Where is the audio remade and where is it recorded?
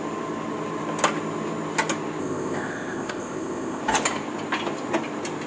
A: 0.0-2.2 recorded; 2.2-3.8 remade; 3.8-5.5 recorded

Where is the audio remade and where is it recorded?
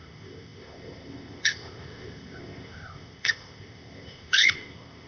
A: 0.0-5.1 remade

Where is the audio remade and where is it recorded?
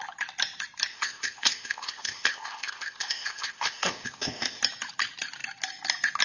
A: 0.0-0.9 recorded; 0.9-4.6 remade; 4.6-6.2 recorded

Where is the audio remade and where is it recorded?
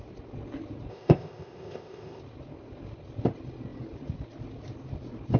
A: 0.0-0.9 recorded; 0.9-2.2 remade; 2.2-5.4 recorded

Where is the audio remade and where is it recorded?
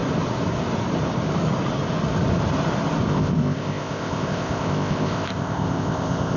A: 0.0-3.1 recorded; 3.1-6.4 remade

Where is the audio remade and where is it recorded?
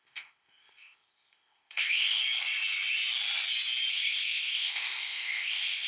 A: 0.0-2.2 remade; 2.2-3.9 recorded; 3.9-5.9 remade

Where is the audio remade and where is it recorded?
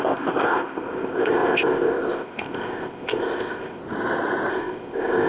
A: 0.0-3.8 remade; 3.8-4.5 recorded; 4.5-5.3 remade